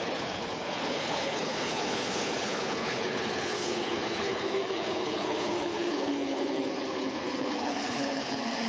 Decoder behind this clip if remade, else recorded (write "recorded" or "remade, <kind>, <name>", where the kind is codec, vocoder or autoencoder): remade, codec, HILCodec